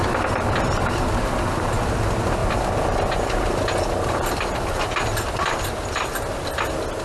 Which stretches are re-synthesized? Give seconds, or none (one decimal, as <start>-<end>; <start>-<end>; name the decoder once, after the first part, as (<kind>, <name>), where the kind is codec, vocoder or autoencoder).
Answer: 2.4-5.9 (vocoder, BigVGAN v2)